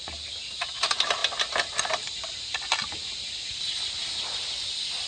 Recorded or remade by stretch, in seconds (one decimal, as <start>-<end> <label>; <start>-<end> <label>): 0.0-5.1 recorded